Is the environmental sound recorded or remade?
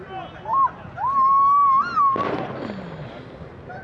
recorded